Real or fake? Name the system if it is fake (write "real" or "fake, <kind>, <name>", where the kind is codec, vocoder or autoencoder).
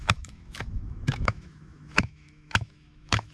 fake, autoencoder, DAC-VAE